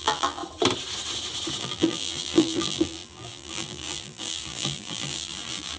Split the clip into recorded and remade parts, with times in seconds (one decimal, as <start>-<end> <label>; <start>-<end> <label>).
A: 0.0-0.4 remade; 0.4-1.6 recorded; 1.6-5.8 remade